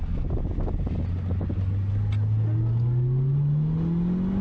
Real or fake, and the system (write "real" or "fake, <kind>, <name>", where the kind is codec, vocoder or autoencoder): real